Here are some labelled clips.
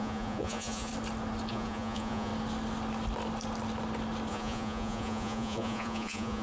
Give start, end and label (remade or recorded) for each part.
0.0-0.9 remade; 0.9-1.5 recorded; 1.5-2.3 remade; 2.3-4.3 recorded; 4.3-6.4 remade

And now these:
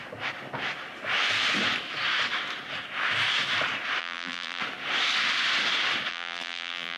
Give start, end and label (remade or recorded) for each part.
0.0-4.0 recorded; 4.0-4.6 remade; 4.6-6.1 recorded; 6.1-7.0 remade

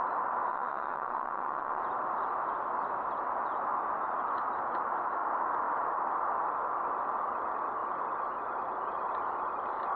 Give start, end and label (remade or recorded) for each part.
0.0-0.5 recorded; 0.5-1.8 remade; 1.8-10.0 recorded

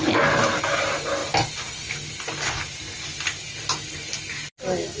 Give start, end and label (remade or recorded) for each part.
0.0-5.0 recorded

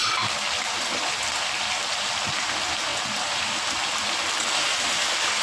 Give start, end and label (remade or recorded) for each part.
0.0-5.4 recorded